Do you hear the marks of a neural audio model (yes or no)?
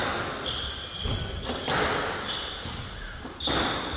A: no